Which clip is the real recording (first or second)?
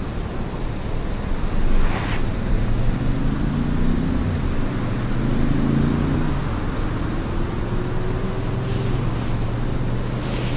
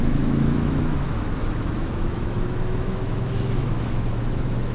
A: first